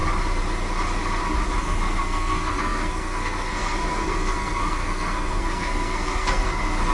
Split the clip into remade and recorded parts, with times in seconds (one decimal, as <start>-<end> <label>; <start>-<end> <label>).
0.0-1.6 recorded; 1.6-6.9 remade